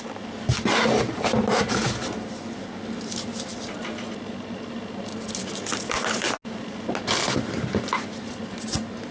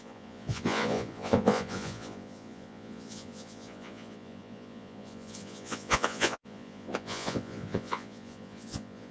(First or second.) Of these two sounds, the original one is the first